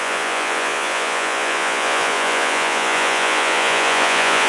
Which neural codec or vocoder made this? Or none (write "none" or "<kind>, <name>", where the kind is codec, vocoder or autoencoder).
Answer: vocoder, Vocos